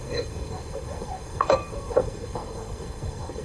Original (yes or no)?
no